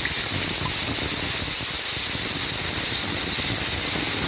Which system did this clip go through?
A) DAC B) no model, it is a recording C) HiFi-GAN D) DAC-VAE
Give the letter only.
B